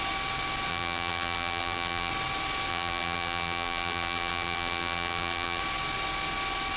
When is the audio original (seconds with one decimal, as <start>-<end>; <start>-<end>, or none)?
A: 0.0-0.7; 2.1-2.7; 5.6-6.8